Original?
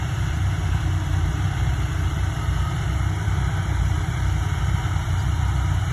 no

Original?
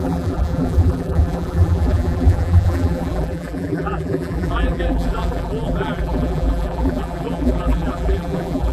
no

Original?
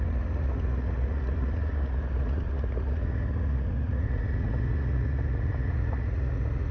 no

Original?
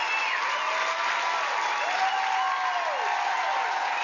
yes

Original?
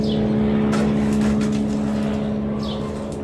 yes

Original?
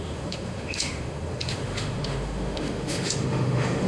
no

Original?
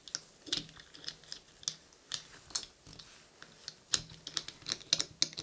yes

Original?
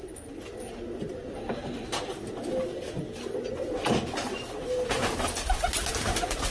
yes